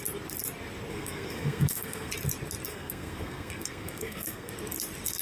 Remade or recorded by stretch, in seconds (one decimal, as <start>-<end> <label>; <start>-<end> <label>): 0.0-0.9 recorded; 0.9-2.1 remade; 2.1-2.7 recorded; 2.7-4.5 remade; 4.5-5.2 recorded